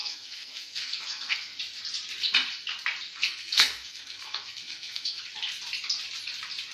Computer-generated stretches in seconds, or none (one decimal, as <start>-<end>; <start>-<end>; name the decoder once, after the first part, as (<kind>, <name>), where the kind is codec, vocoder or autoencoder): 0.0-1.6 (codec, SNAC); 3.1-5.2